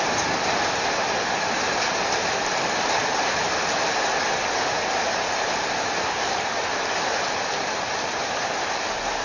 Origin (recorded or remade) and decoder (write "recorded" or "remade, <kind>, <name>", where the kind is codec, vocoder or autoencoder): recorded